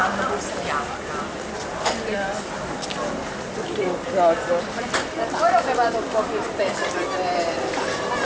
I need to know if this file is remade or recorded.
recorded